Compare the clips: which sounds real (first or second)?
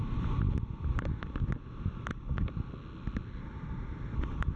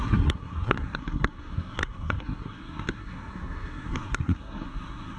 first